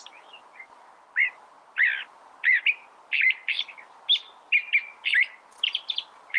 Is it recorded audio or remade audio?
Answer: recorded